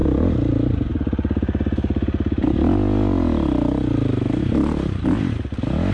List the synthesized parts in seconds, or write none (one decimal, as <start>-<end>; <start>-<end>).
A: none